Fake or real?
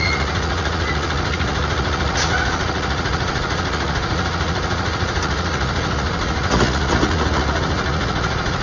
fake